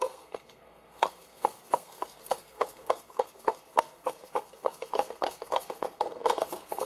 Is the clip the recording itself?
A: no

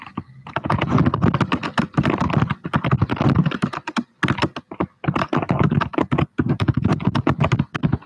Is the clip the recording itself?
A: yes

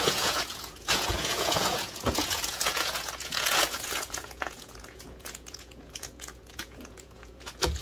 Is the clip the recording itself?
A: no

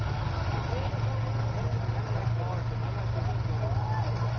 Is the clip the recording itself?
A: yes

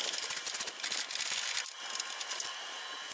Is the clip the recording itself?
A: yes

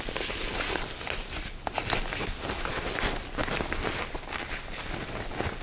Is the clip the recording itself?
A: yes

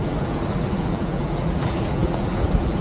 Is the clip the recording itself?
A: no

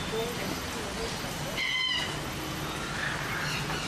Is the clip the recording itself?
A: yes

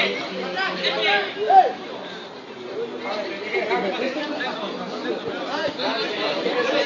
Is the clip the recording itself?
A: yes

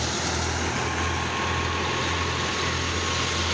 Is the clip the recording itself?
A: yes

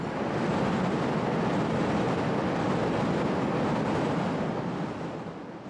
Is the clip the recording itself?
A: yes